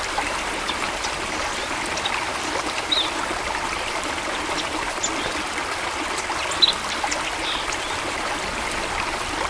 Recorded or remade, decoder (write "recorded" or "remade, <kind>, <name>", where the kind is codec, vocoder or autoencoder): recorded